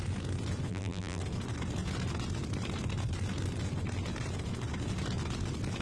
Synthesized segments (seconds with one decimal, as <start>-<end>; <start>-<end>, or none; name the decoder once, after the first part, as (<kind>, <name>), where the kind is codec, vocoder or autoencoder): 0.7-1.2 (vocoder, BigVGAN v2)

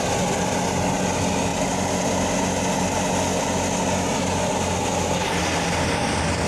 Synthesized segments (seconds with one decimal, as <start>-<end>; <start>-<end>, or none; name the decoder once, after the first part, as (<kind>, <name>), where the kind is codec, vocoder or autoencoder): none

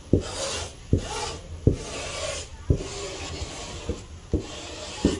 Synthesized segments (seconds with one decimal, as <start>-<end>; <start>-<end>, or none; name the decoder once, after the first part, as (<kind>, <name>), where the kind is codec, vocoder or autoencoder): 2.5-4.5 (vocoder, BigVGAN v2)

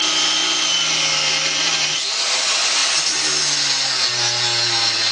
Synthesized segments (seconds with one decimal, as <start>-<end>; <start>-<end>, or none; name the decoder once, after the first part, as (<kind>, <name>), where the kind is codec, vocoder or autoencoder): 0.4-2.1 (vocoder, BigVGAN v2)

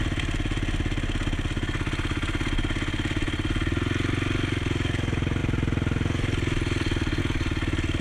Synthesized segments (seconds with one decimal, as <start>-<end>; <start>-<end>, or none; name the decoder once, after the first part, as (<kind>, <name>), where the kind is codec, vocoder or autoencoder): none